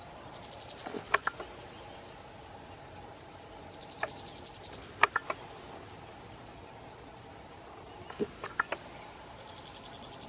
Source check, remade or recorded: recorded